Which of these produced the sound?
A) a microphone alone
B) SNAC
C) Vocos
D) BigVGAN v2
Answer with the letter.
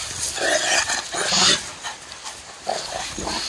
A